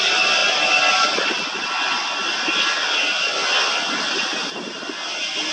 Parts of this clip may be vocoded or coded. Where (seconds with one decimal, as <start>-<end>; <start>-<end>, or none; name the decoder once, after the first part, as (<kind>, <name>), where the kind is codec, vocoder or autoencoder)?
0.0-4.3 (vocoder, BigVGAN v2)